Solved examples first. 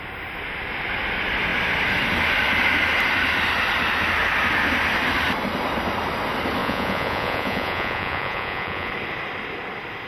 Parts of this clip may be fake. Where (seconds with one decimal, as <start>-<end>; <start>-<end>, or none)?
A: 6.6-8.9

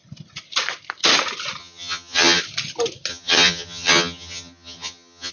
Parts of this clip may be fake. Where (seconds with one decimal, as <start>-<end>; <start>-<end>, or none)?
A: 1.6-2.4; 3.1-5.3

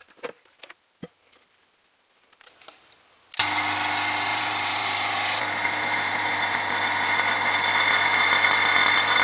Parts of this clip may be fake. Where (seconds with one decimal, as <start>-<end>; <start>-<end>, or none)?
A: 4.3-6.3

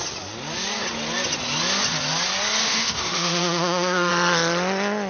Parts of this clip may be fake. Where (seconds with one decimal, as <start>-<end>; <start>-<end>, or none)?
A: 2.6-4.1

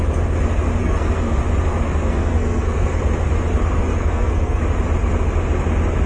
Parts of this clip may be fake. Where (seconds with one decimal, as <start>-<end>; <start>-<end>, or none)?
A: 0.8-1.4; 2.0-3.0; 3.8-4.6

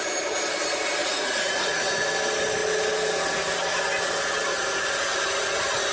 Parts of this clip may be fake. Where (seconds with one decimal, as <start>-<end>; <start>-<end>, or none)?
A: 1.0-1.9